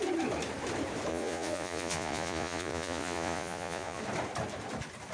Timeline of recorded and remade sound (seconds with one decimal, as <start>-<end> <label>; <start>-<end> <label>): 0.0-1.1 recorded; 1.1-4.0 remade; 4.0-5.1 recorded